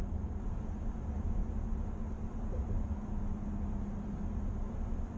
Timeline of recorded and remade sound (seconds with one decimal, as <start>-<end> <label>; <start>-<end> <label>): 0.0-5.2 recorded